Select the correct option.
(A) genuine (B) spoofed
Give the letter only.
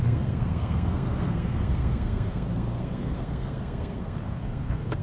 B